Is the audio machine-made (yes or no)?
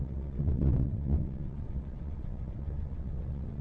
yes